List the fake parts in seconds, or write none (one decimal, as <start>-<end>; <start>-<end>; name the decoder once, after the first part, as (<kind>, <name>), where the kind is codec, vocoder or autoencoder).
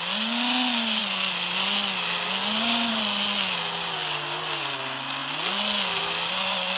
none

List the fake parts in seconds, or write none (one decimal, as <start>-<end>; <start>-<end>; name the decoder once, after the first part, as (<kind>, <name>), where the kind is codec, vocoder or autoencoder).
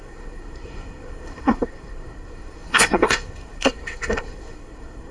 0.0-5.1 (codec, SNAC)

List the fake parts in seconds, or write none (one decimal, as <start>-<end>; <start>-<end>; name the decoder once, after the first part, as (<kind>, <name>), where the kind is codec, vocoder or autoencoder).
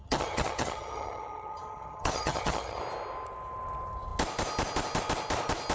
0.0-2.8 (vocoder, HiFi-GAN)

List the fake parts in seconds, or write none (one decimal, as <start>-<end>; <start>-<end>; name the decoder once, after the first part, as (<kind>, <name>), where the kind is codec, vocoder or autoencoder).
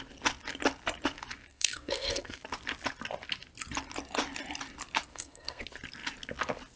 1.5-2.4 (codec, SNAC); 5.1-5.6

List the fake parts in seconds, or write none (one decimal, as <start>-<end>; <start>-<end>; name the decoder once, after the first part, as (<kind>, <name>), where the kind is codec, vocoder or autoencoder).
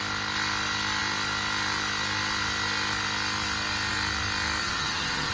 4.6-5.3 (vocoder, HiFi-GAN)